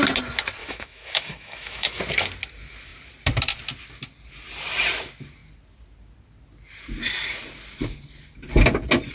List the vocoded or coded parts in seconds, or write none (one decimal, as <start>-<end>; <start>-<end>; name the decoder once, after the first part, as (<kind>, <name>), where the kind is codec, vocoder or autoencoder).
0.6-2.0 (autoencoder, DAC-VAE)